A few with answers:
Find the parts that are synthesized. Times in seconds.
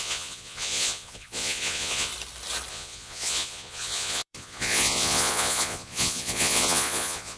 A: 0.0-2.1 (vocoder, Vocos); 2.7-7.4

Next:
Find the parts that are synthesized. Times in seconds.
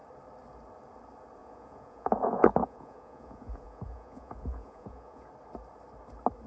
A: 1.4-5.3 (vocoder, Vocos)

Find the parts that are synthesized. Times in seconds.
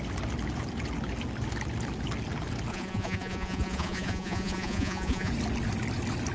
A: 2.7-5.3 (vocoder, Vocos)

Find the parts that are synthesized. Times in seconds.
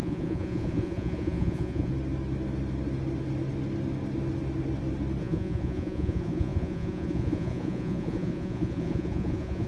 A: 0.0-1.9 (vocoder, Vocos); 5.2-9.7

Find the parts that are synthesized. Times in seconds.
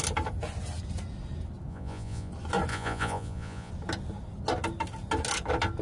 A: 1.7-2.3 (vocoder, Vocos); 2.7-3.7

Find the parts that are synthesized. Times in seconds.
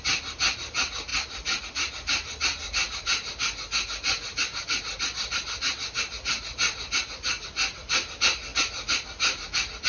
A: none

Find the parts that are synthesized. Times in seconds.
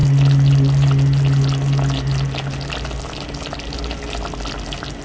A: none